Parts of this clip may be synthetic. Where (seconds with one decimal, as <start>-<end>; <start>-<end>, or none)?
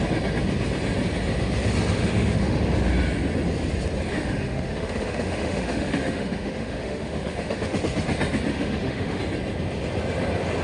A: 2.0-2.6; 4.1-7.8; 8.5-9.2